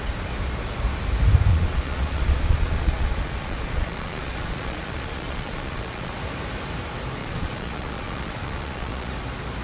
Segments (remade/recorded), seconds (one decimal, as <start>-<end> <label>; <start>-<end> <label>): 0.0-1.5 recorded; 1.5-6.1 remade; 6.1-7.2 recorded; 7.2-9.1 remade; 9.1-9.6 recorded